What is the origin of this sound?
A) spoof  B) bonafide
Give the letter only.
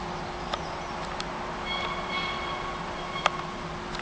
B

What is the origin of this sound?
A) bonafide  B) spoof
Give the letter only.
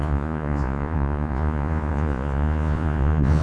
B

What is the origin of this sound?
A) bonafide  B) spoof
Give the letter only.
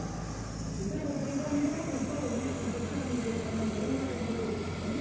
A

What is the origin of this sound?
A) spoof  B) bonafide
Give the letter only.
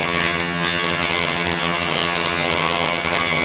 A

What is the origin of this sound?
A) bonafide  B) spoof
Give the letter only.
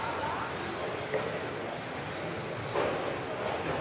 A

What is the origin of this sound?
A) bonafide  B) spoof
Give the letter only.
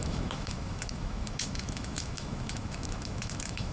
B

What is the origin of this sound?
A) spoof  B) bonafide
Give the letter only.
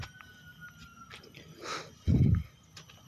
B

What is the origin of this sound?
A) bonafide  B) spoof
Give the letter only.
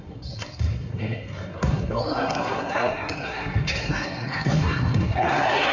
B